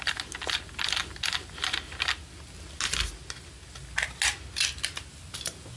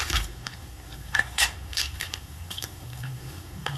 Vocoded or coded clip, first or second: second